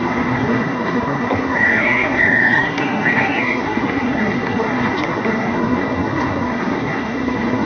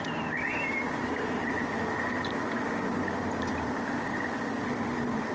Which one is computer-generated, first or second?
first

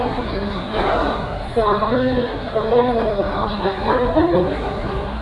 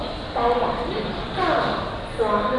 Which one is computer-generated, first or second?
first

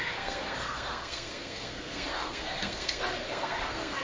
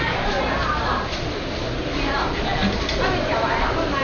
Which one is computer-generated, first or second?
first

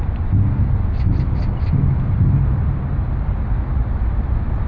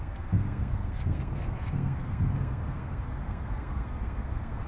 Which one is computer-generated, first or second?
second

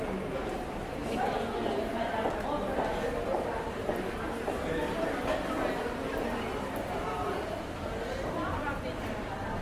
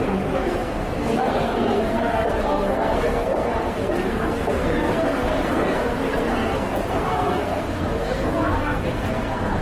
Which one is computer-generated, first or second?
second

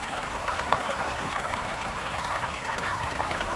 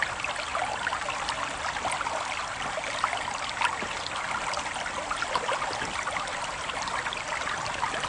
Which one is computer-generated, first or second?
first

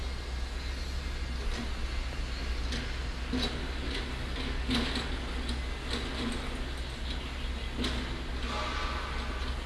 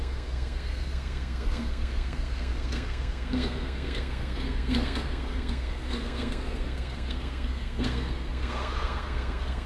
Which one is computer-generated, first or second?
second